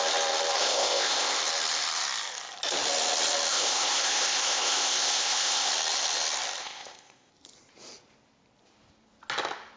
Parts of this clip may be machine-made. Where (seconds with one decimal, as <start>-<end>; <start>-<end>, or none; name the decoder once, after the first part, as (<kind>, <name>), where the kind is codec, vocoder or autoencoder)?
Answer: 0.6-1.4 (codec, ZipCodec); 3.5-5.7; 6.6-7.3